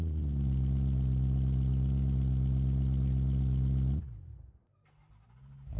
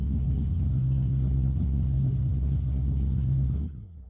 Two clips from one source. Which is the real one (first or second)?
first